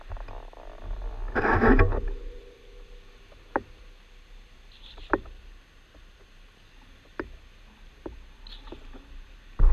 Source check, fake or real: real